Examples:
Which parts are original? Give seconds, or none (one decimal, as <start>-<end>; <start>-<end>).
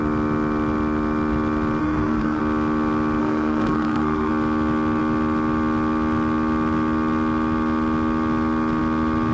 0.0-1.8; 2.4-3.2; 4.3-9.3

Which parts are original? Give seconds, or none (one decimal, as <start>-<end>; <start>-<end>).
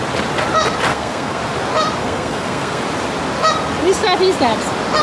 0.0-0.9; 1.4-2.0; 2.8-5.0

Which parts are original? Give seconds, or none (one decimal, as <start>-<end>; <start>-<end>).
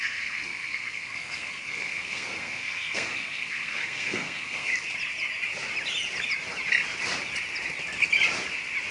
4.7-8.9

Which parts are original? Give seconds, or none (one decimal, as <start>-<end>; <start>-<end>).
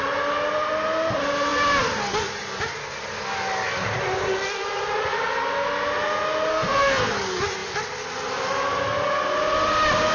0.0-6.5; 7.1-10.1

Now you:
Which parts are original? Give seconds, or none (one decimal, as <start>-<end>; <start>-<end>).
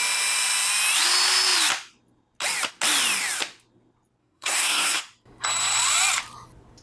0.0-4.2; 5.0-6.8